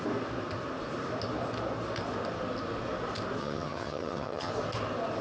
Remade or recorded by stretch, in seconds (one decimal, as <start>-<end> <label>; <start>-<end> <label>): 0.0-3.4 recorded; 3.4-4.5 remade; 4.5-5.2 recorded